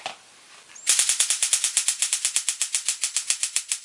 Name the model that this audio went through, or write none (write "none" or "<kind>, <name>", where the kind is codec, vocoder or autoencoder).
none